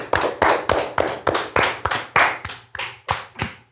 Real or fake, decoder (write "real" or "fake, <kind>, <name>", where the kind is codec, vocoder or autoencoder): real